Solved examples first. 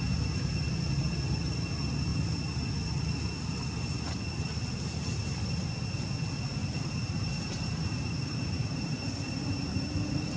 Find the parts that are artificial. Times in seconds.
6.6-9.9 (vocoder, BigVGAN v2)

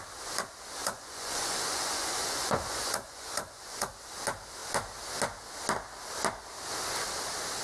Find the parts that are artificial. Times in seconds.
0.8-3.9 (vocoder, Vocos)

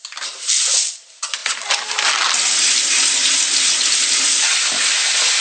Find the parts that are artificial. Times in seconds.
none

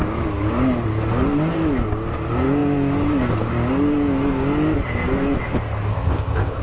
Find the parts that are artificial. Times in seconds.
5.9-6.6 (codec, ZipCodec)

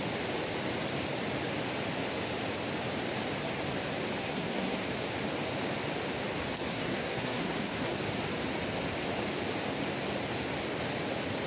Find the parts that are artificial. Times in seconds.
4.2-4.8 (codec, SNAC); 6.7-8.0

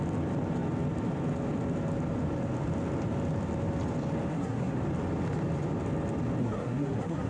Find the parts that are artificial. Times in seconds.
4.3-4.8 (codec, SNAC); 6.4-7.3

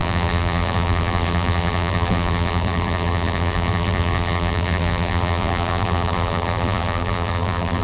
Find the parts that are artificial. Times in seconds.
0.0-7.8 (vocoder, BigVGAN v2)